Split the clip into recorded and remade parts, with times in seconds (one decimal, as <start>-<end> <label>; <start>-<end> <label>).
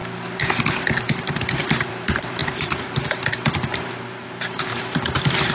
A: 0.0-0.6 recorded; 0.6-5.5 remade